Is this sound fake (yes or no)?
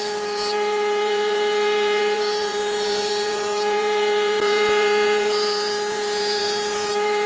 yes